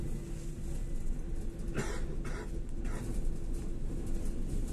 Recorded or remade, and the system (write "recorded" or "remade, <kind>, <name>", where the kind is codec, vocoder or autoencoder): recorded